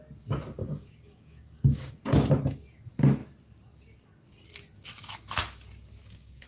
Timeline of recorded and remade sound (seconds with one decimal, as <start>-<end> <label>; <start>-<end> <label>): 0.0-0.6 recorded; 0.6-2.0 remade; 2.0-6.0 recorded; 6.0-6.5 remade